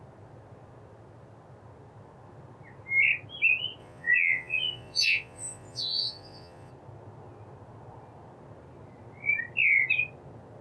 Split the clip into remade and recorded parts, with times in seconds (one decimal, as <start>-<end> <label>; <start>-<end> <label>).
0.0-3.8 recorded; 3.8-6.7 remade; 6.7-10.6 recorded